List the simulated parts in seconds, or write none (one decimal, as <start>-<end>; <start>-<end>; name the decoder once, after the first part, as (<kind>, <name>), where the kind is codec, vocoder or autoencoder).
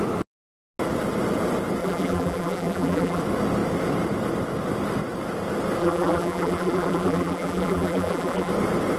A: 1.8-3.2 (vocoder, BigVGAN v2); 5.8-8.5